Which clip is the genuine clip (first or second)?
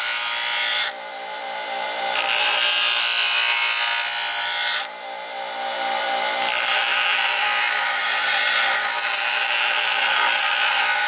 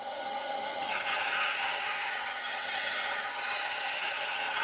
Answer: first